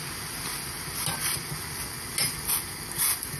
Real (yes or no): yes